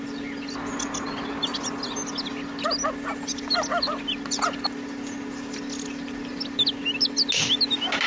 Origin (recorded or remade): recorded